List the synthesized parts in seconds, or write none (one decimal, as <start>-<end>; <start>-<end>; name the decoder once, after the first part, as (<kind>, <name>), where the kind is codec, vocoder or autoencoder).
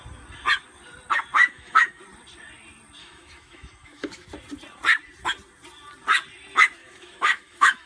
1.4-2.0 (autoencoder, DAC-VAE); 3.0-4.3; 6.8-7.9